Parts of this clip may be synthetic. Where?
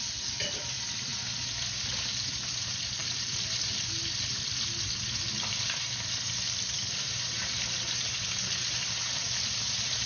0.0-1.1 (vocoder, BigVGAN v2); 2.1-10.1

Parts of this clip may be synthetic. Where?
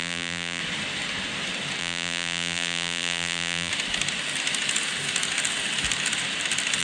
0.0-0.6 (vocoder, BigVGAN v2); 1.8-3.7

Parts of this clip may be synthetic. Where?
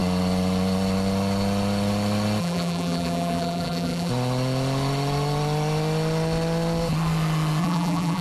2.4-4.1 (vocoder, BigVGAN v2); 7.6-8.2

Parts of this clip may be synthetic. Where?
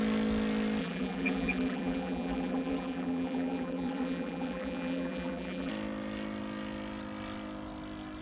0.8-5.7 (vocoder, BigVGAN v2)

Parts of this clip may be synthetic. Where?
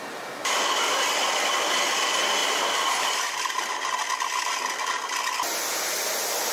2.4-3.7 (vocoder, BigVGAN v2)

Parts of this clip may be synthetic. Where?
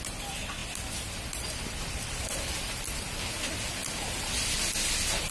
0.6-1.5 (vocoder, BigVGAN v2); 3.8-4.5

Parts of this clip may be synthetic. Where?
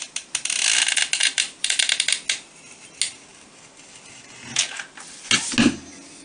1.2-1.8 (vocoder, BigVGAN v2)